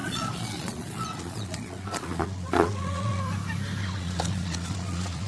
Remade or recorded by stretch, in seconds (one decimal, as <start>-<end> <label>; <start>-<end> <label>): 0.0-3.2 remade; 3.2-3.8 recorded; 3.8-5.3 remade